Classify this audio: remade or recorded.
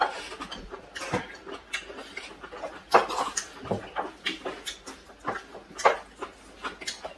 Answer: recorded